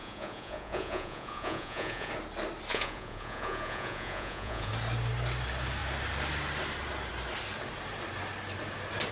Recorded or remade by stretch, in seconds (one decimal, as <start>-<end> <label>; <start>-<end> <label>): 0.0-2.1 remade; 2.1-2.7 recorded; 2.7-4.7 remade; 4.7-9.1 recorded